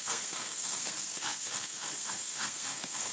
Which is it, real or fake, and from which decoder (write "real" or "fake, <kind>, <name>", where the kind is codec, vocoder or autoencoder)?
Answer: fake, codec, SNAC